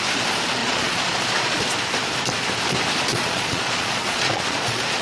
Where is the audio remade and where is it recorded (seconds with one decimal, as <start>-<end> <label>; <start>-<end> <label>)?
0.0-0.6 recorded; 0.6-1.6 remade; 1.6-3.1 recorded; 3.1-5.0 remade